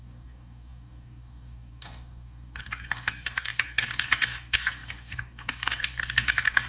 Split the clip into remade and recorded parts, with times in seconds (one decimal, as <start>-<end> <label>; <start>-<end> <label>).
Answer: 0.0-6.7 remade